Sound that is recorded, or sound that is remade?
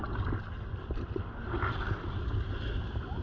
recorded